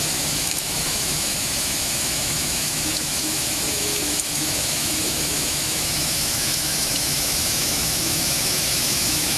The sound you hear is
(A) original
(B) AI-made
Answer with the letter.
B